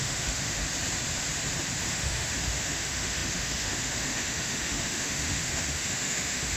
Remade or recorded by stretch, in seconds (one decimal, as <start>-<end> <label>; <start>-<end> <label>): 0.0-0.6 remade; 0.6-1.9 recorded; 1.9-6.6 remade